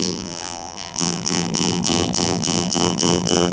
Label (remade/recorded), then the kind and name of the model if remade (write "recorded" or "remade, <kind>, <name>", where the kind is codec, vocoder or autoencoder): remade, vocoder, BigVGAN v2